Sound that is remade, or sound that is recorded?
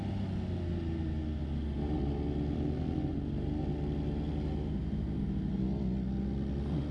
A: recorded